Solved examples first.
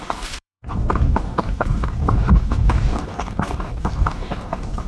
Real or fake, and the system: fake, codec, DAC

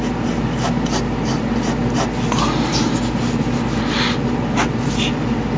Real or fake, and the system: real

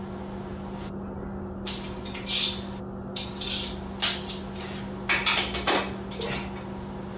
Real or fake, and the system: real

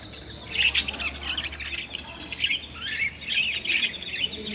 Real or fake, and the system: real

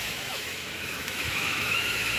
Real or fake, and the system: fake, autoencoder, DAC-VAE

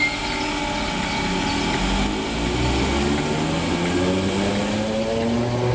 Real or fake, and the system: real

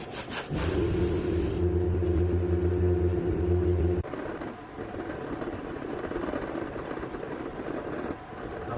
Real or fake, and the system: real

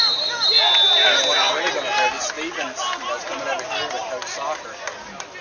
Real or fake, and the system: real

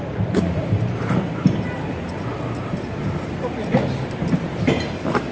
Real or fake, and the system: fake, vocoder, BigVGAN v2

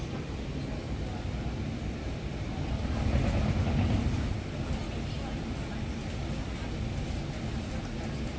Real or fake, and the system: real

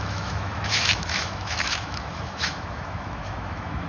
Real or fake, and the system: fake, autoencoder, DAC-VAE